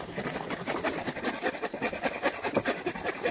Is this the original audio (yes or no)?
yes